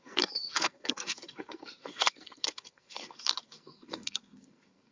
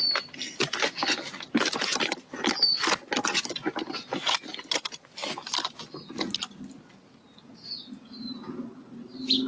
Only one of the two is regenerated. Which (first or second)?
first